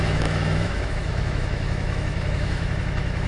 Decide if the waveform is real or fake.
fake